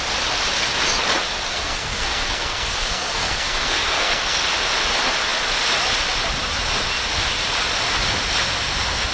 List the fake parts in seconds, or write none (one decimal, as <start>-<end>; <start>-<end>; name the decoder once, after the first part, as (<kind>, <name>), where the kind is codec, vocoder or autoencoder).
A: 1.5-4.4 (codec, SNAC)